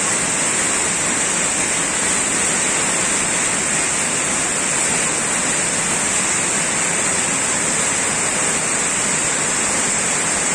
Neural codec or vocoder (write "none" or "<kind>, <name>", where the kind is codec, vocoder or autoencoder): none